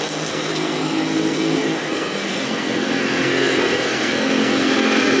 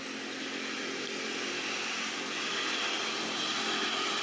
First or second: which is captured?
second